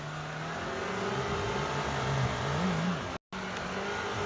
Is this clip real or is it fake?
real